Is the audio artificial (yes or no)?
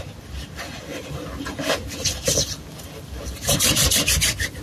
yes